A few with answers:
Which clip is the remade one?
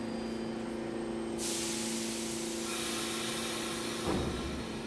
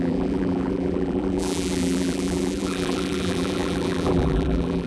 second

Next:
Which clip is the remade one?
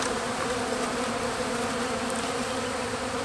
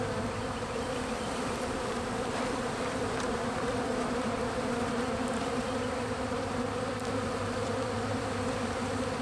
second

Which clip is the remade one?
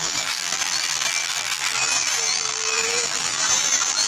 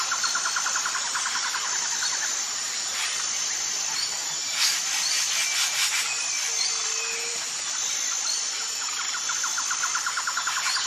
first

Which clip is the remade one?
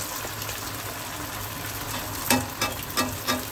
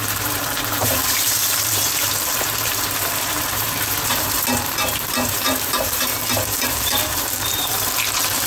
second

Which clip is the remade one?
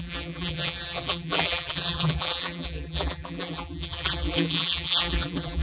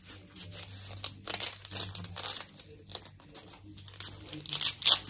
first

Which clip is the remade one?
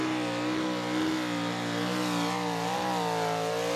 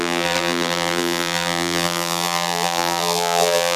second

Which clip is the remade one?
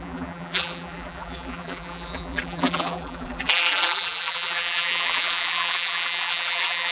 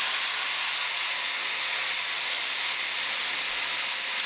first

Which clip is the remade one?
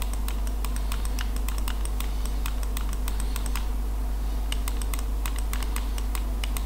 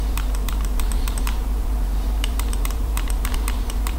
second